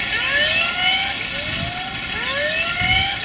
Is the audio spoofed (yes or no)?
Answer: no